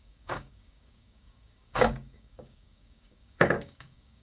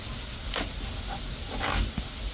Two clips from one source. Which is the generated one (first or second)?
first